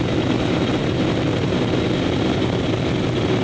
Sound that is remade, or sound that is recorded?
recorded